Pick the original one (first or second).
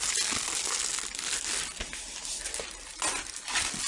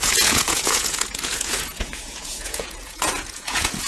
first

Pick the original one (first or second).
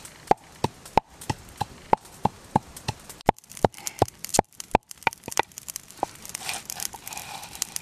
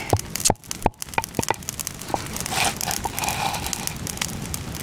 second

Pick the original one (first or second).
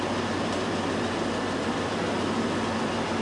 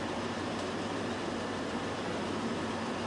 first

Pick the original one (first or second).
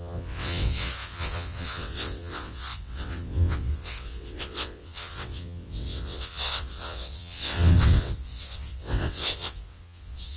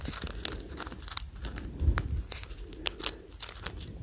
second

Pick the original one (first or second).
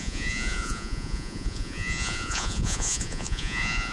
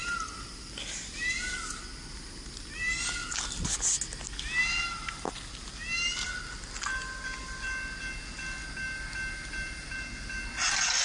second